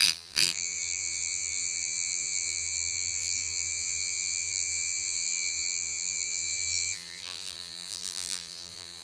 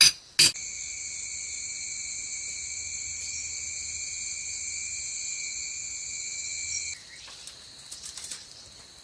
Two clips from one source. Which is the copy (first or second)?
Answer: first